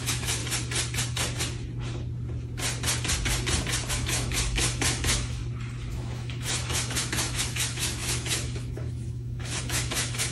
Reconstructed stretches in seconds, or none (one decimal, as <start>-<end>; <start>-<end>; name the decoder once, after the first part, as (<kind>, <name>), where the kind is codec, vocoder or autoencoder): 0.0-0.4 (autoencoder, DAC-VAE); 3.9-5.4; 5.9-10.3